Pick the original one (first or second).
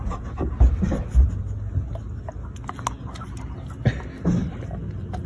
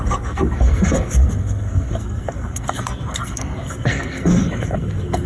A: first